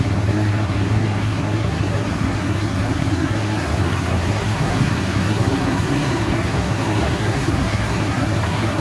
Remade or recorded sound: remade